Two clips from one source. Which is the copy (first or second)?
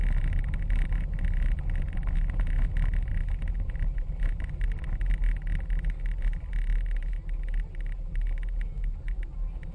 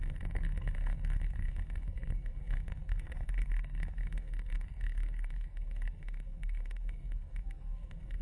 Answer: second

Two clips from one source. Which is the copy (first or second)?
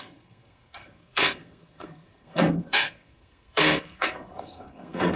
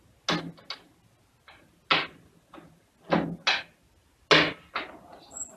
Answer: first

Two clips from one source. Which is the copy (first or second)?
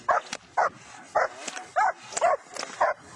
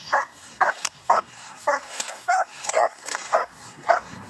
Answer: second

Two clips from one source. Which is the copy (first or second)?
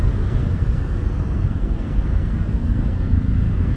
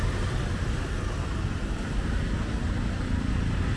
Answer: first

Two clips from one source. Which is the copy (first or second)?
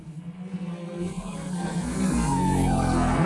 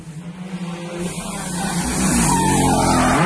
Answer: first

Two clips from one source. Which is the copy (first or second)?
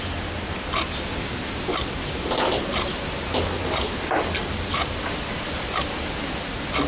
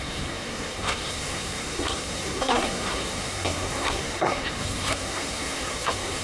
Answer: second